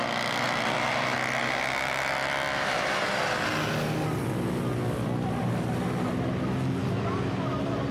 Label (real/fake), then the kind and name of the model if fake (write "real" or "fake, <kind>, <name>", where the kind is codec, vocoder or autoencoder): real